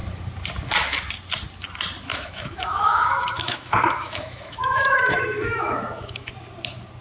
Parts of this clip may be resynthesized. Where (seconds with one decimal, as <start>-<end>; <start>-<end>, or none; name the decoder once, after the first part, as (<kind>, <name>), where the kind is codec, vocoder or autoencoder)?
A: 2.1-6.3 (autoencoder, DAC-VAE)